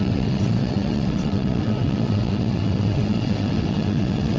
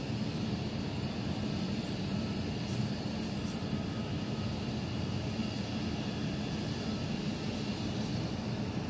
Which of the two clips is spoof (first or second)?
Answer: first